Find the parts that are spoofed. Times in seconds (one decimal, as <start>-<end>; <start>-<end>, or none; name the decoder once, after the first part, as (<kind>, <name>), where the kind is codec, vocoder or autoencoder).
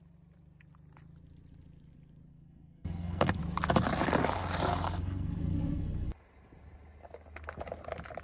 2.3-3.4 (codec, SNAC); 4.7-6.1